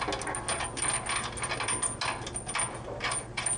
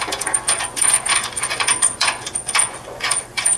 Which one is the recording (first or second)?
first